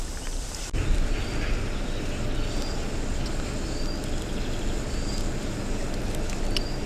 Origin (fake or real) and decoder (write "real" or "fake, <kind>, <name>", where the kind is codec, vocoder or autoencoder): real